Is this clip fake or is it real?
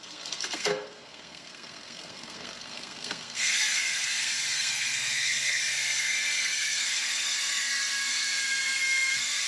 fake